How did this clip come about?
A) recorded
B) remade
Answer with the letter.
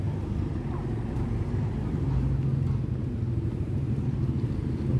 A